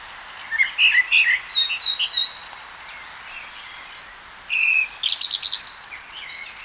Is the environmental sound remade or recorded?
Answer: recorded